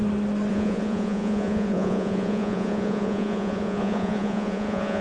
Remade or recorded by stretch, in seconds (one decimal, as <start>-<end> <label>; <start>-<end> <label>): 0.0-0.5 recorded; 0.5-5.0 remade